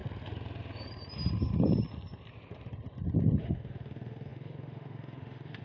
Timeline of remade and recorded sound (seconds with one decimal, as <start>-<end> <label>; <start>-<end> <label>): 0.0-3.4 recorded; 3.4-5.6 remade